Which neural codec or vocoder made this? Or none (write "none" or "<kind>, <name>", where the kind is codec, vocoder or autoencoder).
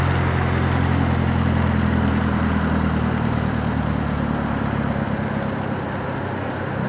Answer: none